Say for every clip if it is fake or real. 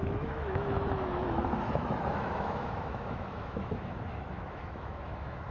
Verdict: fake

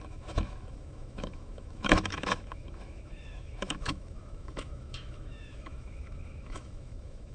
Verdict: fake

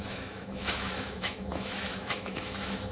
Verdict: fake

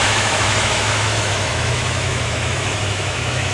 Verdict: fake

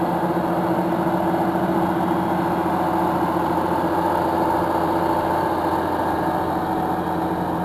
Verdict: real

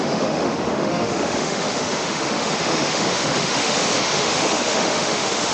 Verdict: fake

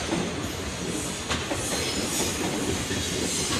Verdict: real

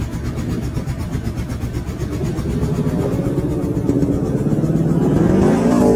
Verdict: real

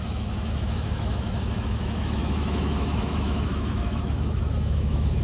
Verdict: fake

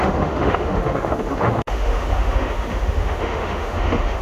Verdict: fake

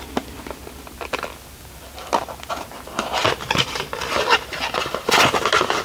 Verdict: real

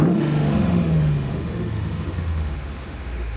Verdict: fake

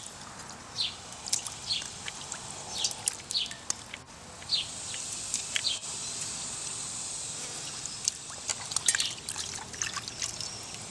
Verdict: real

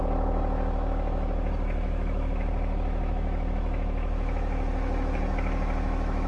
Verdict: fake